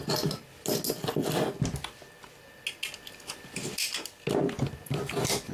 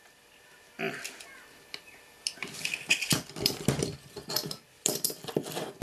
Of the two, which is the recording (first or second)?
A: first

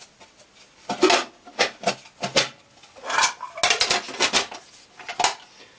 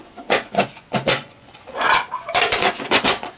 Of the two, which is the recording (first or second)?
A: first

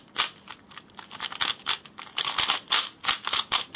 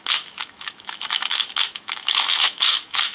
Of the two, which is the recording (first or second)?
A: first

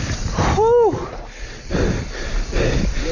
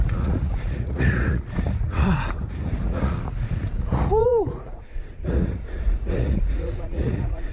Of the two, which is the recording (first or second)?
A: first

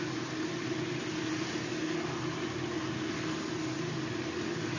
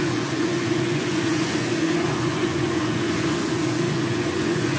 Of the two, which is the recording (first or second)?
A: first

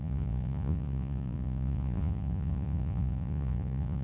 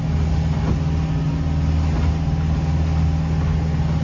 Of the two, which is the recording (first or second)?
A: second